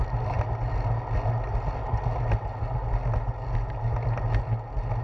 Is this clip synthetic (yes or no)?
no